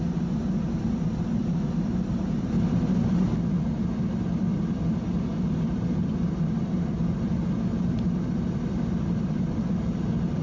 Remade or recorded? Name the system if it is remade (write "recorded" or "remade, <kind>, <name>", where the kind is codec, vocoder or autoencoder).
remade, vocoder, BigVGAN v2